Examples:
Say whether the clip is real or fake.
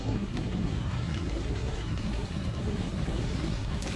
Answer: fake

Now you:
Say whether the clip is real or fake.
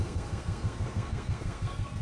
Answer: fake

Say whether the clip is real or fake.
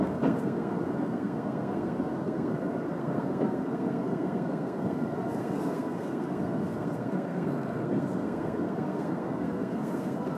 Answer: fake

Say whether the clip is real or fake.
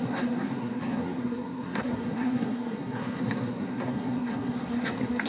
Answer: fake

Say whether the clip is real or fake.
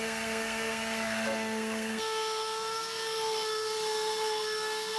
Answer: fake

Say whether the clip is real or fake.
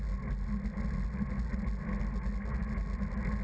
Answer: real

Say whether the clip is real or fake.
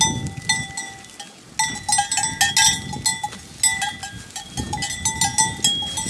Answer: real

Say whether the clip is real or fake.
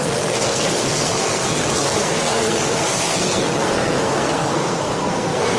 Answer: fake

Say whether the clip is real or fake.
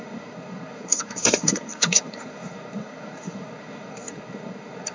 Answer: fake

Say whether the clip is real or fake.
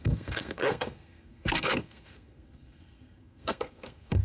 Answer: fake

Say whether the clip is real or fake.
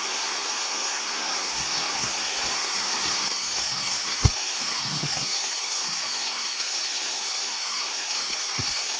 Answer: fake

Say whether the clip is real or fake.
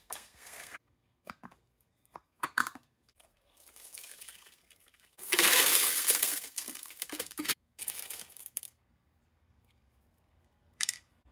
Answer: fake